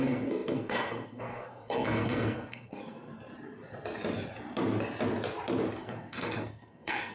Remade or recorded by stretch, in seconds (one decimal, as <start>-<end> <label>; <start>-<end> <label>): 0.0-3.1 remade; 3.1-5.8 recorded; 5.8-7.1 remade